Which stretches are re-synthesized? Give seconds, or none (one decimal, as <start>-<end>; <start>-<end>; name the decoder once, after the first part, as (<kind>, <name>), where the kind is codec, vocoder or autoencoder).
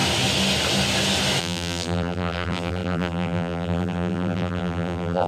1.4-5.3 (vocoder, BigVGAN v2)